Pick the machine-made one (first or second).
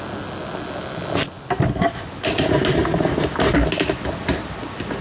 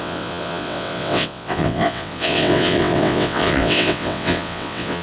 second